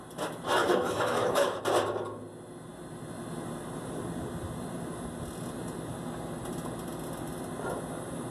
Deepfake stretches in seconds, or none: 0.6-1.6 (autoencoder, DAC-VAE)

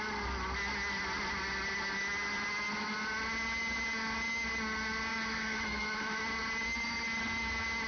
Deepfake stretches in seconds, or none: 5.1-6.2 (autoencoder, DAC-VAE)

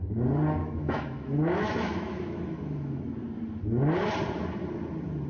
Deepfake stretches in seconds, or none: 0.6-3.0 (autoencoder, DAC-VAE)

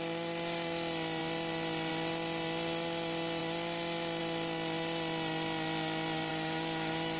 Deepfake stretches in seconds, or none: 6.3-7.2 (autoencoder, DAC-VAE)